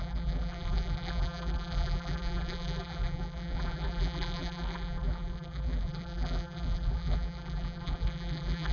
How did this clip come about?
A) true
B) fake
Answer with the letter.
B